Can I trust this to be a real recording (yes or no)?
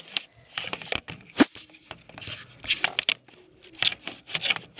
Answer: yes